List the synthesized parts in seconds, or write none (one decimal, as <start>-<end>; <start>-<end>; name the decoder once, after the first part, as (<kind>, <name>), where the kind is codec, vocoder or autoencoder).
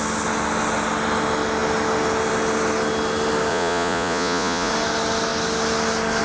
3.5-4.7 (vocoder, Vocos)